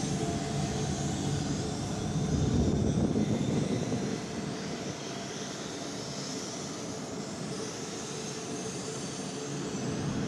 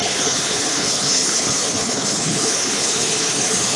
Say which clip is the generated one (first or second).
second